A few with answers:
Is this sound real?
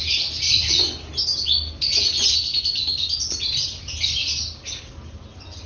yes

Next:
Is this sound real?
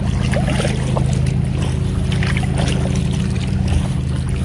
yes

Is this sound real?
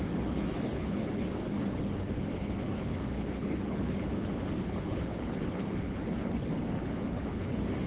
no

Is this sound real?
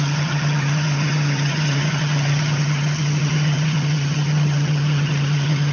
no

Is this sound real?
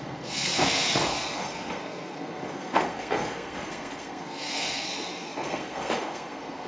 no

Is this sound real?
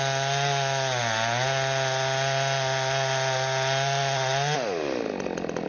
yes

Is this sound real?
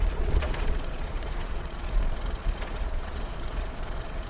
no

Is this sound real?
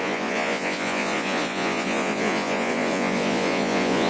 no